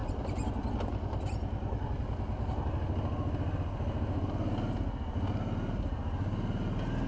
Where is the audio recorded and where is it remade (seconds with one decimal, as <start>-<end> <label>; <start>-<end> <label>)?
0.0-7.1 recorded